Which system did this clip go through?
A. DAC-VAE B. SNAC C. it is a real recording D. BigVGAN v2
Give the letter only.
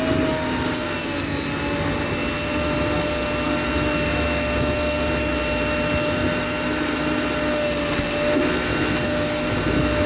C